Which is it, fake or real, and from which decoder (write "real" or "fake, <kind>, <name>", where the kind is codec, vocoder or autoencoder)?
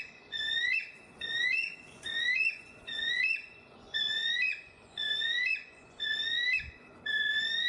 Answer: fake, vocoder, Vocos